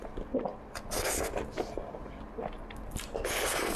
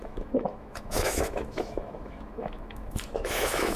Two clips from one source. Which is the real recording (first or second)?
first